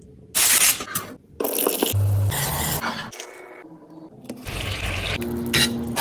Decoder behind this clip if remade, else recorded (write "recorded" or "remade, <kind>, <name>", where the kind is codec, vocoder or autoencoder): recorded